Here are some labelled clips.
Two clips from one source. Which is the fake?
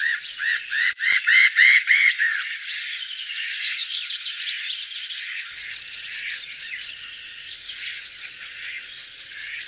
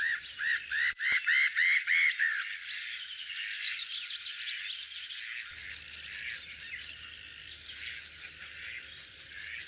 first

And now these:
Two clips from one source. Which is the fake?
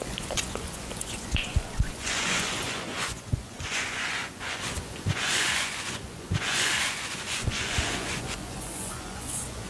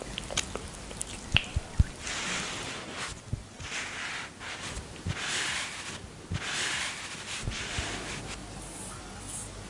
first